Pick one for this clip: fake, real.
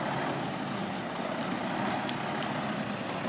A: real